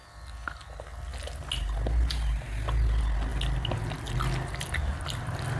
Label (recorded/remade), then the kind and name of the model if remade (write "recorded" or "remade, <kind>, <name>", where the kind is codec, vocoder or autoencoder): recorded